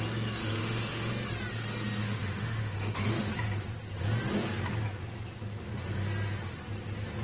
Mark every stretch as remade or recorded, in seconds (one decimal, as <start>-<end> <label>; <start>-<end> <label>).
0.0-0.4 recorded; 0.4-1.1 remade; 1.1-2.0 recorded; 2.0-3.3 remade; 3.3-7.2 recorded